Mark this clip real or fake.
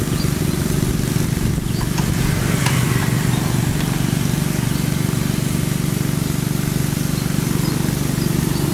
real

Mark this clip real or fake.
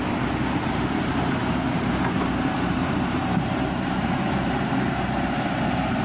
fake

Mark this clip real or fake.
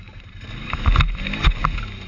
real